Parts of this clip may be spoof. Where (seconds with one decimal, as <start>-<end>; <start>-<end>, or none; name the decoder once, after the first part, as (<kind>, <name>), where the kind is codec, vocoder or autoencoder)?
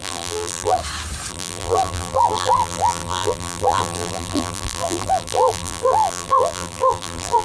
0.0-0.8 (vocoder, BigVGAN v2); 1.3-7.4